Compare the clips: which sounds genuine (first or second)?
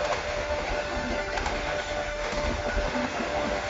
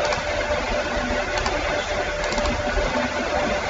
second